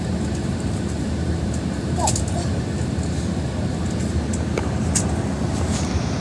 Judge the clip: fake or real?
real